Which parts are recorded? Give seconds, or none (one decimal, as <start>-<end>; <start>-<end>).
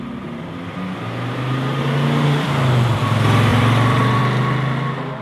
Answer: 0.0-1.7; 3.0-3.5; 4.2-5.2